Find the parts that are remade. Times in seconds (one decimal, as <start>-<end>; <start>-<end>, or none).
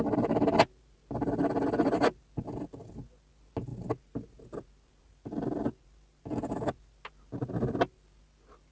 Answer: none